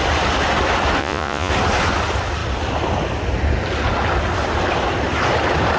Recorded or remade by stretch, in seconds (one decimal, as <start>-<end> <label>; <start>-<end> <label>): 0.0-1.0 recorded; 1.0-1.5 remade; 1.5-5.8 recorded